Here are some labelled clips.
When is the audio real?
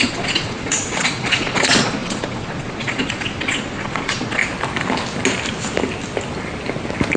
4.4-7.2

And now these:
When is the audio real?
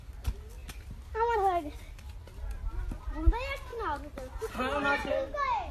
0.0-5.7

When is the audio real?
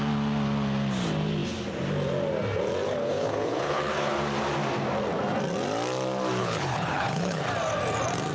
0.0-3.0; 4.1-6.4; 7.5-8.3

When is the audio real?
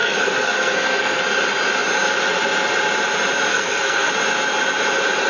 1.2-3.5; 4.1-5.3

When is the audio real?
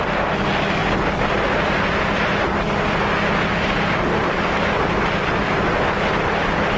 0.0-6.8